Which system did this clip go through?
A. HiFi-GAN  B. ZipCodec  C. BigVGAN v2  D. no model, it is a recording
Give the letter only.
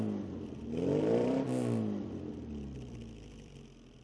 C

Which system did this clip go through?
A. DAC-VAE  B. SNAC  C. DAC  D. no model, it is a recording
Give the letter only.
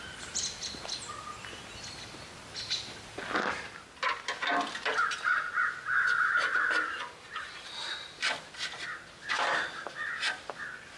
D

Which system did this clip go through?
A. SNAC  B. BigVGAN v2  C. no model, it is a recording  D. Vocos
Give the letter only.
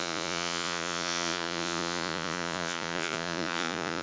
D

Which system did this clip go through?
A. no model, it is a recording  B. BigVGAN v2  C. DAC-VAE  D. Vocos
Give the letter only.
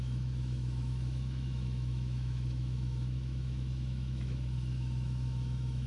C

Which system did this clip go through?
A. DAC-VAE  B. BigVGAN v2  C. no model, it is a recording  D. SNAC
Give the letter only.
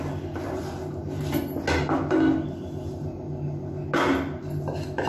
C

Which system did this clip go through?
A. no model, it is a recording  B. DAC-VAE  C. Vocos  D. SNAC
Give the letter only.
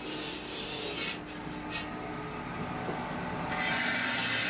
A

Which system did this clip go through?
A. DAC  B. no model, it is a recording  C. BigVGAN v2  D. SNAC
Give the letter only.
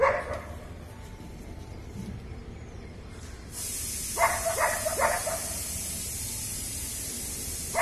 B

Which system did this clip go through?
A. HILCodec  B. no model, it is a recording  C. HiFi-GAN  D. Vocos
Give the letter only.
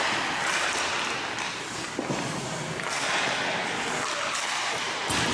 B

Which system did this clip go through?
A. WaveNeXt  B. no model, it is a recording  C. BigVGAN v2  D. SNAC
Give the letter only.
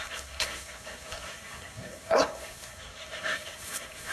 D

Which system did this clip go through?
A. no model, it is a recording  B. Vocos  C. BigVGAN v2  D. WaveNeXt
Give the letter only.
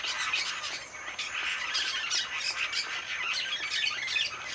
A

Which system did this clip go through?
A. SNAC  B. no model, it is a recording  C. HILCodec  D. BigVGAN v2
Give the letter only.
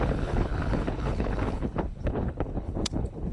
C